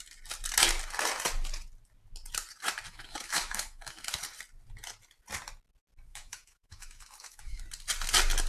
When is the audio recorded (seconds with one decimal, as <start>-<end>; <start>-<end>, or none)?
0.0-2.9; 4.2-6.1; 7.6-8.5